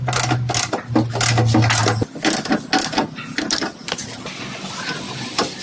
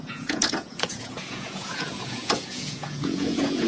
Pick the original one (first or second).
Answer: first